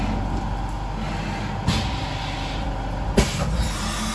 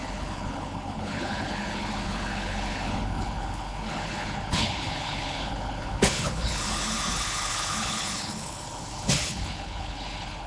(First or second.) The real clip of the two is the first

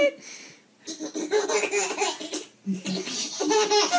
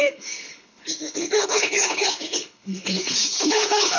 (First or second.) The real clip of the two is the first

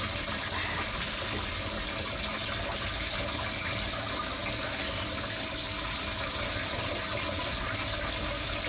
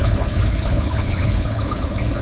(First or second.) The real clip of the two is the first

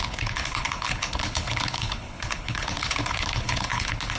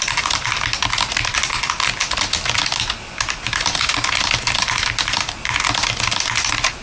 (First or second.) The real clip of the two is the second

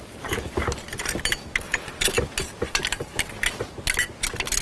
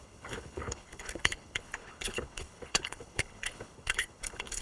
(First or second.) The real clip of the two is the first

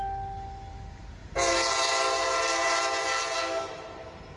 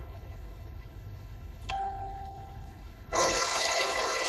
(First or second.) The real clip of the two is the first